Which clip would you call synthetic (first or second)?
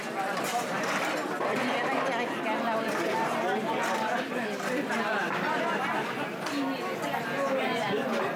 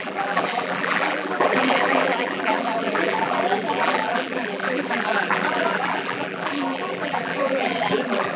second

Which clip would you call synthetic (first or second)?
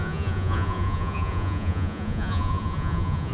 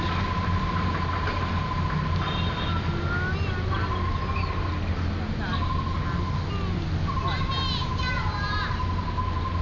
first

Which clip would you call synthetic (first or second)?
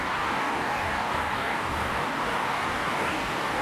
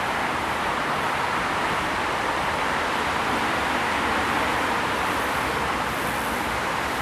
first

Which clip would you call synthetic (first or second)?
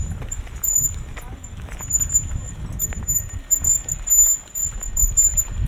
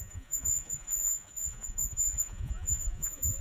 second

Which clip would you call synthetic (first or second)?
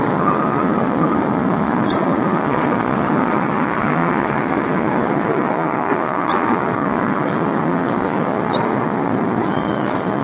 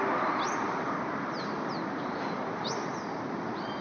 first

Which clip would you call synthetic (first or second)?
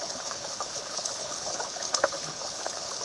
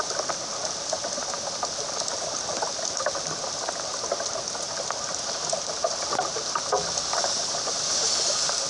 first